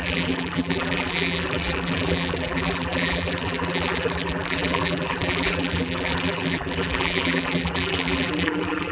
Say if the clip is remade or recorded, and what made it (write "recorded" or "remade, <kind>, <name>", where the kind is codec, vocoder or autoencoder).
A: remade, vocoder, BigVGAN v2